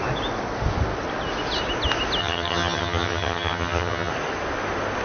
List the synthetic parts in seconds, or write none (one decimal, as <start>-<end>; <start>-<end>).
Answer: 2.2-4.1